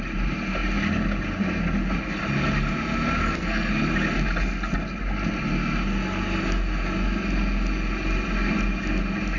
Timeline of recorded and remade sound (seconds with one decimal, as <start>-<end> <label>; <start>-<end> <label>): 0.0-3.2 recorded; 3.2-3.7 remade; 3.7-9.4 recorded